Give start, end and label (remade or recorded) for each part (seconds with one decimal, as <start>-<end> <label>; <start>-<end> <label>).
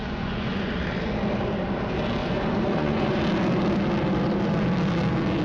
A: 0.0-0.7 remade; 0.7-2.2 recorded; 2.2-3.2 remade; 3.2-5.4 recorded